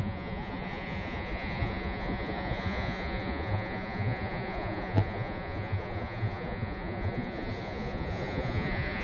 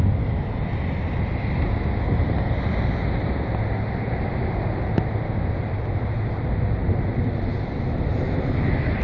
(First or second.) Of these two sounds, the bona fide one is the second